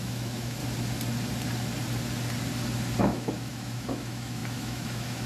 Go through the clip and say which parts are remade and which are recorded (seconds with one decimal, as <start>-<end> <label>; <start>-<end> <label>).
0.0-0.6 remade; 0.6-3.0 recorded; 3.0-5.3 remade